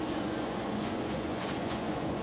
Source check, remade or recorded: remade